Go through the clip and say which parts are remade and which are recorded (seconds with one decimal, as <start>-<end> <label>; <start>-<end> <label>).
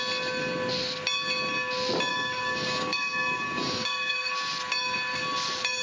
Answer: 0.0-2.1 recorded; 2.1-4.3 remade; 4.3-5.8 recorded